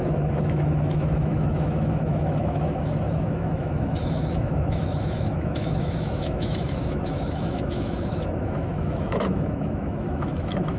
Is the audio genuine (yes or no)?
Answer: no